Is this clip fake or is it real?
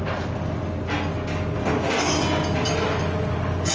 real